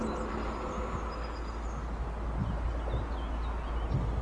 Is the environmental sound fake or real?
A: real